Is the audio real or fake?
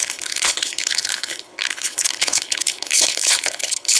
fake